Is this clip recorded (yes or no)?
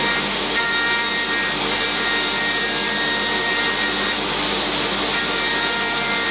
yes